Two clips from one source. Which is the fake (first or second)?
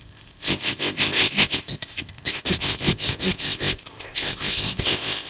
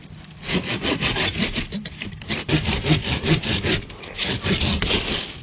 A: first